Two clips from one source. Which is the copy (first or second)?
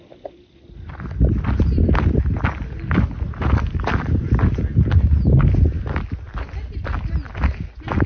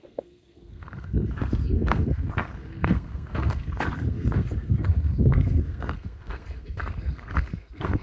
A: second